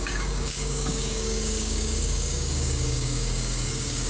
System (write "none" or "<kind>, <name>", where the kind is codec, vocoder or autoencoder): codec, DAC